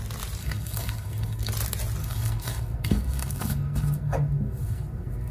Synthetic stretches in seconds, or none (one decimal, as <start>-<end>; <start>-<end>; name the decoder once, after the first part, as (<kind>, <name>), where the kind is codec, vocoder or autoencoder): 0.4-1.5 (codec, SNAC); 2.0-5.3